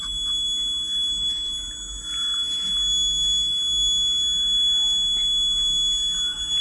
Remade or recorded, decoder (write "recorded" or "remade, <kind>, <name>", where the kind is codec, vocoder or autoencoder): recorded